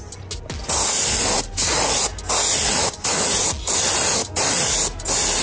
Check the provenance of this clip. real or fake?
real